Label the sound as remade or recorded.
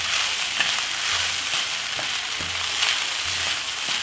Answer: recorded